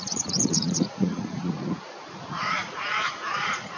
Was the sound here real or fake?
fake